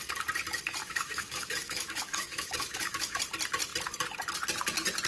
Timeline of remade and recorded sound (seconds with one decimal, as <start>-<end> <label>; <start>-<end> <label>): 0.0-0.8 recorded; 0.8-3.2 remade; 3.2-5.1 recorded

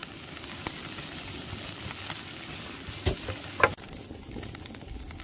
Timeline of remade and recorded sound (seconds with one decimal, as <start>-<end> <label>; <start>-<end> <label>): 0.0-5.2 recorded

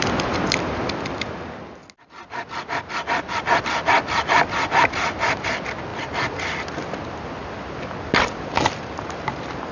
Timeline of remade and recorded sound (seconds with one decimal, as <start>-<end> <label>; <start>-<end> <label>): 0.0-9.7 recorded